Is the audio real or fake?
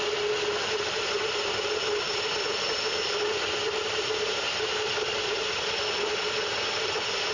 fake